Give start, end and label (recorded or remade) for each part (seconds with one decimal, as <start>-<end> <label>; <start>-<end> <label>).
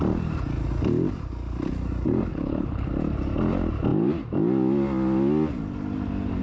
0.0-2.3 recorded; 2.3-2.9 remade; 2.9-6.4 recorded